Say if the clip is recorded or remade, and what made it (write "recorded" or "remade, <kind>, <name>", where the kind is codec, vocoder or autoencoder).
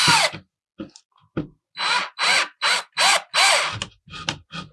recorded